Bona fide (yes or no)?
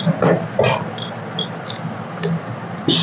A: yes